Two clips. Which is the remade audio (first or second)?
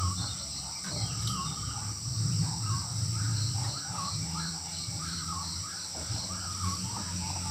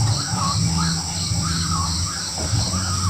first